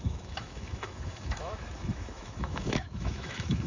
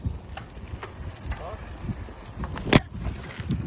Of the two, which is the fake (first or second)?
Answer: first